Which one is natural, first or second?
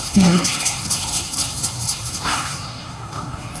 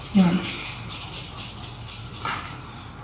second